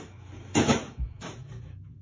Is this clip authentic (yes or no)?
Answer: no